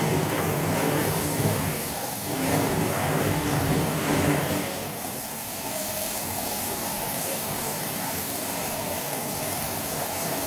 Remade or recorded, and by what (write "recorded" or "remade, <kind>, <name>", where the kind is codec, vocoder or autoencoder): remade, codec, DAC